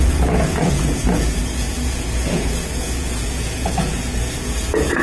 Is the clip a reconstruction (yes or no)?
yes